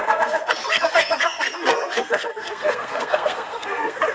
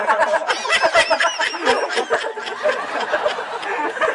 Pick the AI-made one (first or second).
first